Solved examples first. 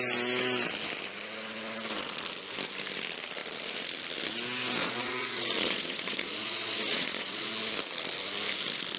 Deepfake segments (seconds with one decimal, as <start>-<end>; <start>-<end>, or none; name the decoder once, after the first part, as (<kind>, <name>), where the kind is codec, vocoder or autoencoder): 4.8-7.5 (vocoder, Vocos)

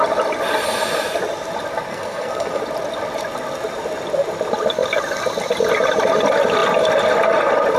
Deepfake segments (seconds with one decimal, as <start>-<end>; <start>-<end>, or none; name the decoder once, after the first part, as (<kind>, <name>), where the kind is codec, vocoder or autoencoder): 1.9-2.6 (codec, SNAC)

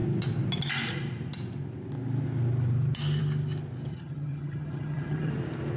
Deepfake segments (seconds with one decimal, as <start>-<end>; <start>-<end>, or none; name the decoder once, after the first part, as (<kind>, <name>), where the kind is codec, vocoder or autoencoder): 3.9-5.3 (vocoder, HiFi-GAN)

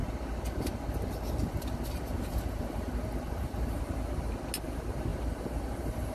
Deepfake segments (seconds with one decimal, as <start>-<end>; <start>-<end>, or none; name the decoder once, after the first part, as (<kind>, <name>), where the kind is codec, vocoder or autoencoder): 1.4-3.8 (vocoder, BigVGAN v2); 5.1-6.1

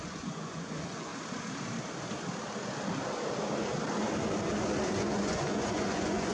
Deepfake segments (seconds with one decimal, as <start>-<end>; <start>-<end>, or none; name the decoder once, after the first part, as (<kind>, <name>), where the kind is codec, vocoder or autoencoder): 0.0-1.1 (vocoder, Vocos); 4.9-6.3

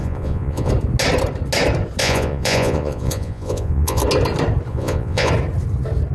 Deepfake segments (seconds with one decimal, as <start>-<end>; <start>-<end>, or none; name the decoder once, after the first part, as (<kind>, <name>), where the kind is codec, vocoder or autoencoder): 0.0-0.7 (vocoder, Vocos); 2.0-4.0; 4.7-5.3

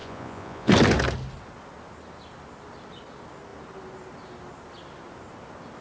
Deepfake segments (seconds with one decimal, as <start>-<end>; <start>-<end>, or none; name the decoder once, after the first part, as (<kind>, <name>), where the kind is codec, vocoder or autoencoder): 0.0-0.7 (vocoder, Vocos)

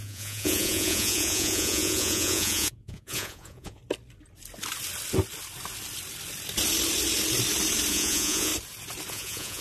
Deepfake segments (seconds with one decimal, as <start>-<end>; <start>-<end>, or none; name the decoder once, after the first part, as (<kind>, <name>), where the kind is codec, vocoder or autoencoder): 0.0-3.8 (vocoder, Vocos); 7.9-8.5; 9.1-9.6